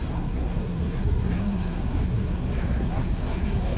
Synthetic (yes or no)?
yes